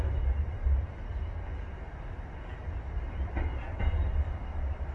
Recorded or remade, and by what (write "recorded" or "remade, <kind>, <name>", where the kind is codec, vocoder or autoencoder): recorded